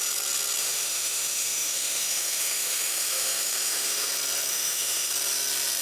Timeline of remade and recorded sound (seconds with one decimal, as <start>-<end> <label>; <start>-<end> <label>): 0.0-0.6 recorded; 0.6-4.1 remade; 4.1-4.5 recorded; 4.5-5.1 remade; 5.1-5.8 recorded